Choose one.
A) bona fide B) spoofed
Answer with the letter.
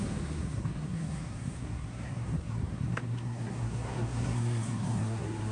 B